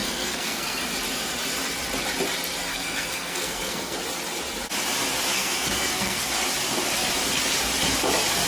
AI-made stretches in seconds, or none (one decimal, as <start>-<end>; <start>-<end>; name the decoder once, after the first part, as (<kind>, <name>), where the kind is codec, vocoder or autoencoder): 0.0-0.8 (codec, SNAC); 2.7-4.0; 5.3-6.3